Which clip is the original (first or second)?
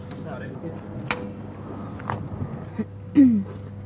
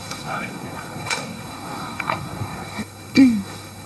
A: first